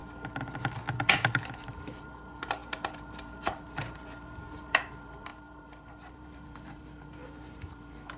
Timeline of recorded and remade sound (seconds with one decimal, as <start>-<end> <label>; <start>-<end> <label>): 0.0-1.3 recorded; 1.3-8.2 remade